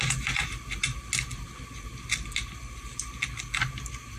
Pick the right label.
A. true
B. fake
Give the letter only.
A